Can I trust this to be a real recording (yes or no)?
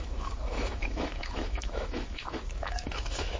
no